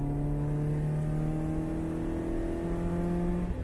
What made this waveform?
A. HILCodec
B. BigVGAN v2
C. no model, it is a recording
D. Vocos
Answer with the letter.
C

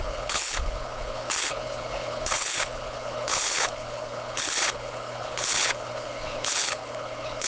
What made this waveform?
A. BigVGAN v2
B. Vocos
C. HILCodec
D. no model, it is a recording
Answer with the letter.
C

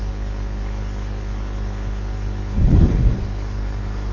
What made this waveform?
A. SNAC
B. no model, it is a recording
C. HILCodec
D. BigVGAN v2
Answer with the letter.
C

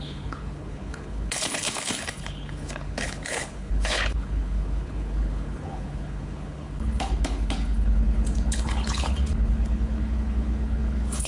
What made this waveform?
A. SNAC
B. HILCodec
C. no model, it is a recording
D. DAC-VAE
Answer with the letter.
B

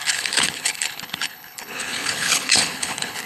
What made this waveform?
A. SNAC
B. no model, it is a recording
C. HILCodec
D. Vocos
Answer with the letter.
C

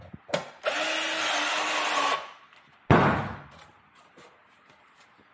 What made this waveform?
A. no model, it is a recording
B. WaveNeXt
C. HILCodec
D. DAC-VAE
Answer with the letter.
A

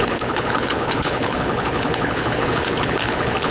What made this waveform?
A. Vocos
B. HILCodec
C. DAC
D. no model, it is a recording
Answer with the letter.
B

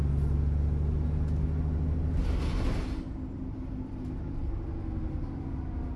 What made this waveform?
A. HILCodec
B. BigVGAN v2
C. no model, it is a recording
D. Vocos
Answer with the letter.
C